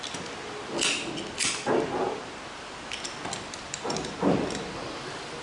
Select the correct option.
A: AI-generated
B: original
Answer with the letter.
B